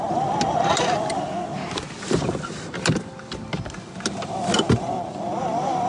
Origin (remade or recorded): recorded